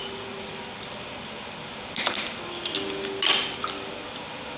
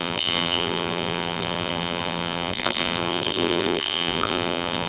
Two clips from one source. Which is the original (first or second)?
first